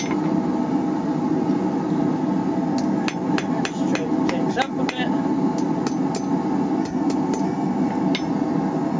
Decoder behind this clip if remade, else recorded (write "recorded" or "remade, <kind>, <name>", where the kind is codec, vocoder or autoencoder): recorded